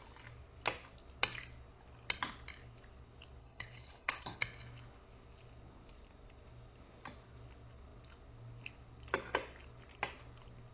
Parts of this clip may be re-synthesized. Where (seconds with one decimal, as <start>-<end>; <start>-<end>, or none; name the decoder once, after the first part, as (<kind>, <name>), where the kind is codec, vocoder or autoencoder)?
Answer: 3.4-4.4 (codec, HILCodec)

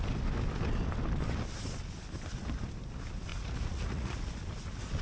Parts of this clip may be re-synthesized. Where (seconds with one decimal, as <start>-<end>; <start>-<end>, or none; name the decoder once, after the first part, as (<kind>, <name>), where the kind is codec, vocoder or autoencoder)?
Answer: 3.3-4.3 (vocoder, Vocos)

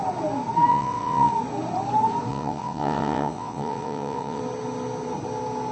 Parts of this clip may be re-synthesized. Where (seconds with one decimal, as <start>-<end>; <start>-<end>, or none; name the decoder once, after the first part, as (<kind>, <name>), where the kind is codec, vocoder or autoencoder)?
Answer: 0.7-1.3 (vocoder, WaveNeXt); 2.3-4.4